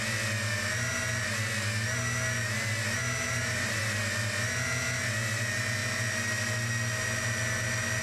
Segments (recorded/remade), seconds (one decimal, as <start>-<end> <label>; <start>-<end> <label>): 0.0-3.4 recorded; 3.4-4.0 remade; 4.0-8.0 recorded